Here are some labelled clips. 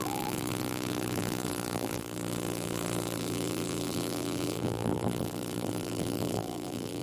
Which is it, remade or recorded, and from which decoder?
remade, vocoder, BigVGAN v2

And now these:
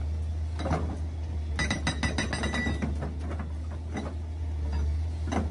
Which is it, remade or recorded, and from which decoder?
recorded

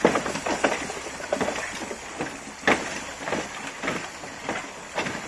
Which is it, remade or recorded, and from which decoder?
recorded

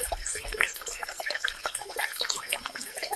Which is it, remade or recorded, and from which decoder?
remade, codec, SNAC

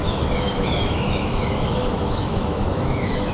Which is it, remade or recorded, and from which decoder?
remade, autoencoder, DAC-VAE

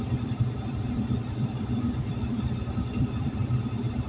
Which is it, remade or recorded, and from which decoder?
remade, vocoder, BigVGAN v2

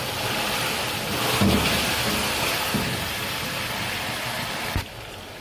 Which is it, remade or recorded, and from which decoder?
recorded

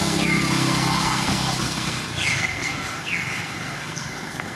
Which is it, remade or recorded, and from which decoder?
remade, codec, SNAC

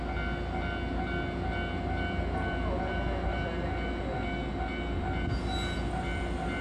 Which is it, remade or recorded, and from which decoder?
recorded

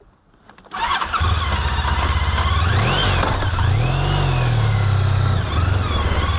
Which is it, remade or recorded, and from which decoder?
recorded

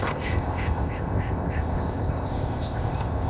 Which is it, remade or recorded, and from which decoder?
remade, codec, ZipCodec